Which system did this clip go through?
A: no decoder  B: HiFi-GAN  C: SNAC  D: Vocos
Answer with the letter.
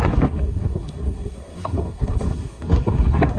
C